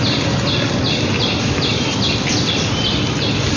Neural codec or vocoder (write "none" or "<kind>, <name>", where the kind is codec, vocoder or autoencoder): none